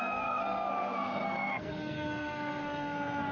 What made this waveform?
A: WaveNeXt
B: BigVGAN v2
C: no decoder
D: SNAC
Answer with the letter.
D